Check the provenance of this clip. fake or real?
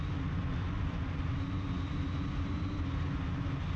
real